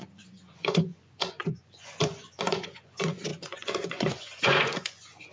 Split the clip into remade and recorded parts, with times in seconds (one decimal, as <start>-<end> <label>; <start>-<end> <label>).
0.0-5.3 remade